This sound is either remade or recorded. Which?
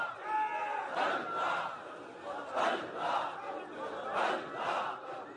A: recorded